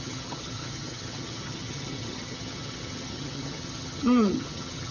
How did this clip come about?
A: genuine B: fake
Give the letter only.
B